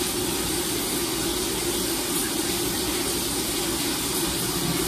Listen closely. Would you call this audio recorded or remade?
recorded